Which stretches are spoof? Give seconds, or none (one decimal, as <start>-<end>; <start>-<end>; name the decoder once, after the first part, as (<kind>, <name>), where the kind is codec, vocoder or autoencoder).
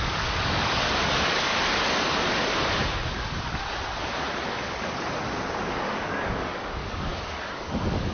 0.0-1.5 (codec, DAC); 5.7-8.1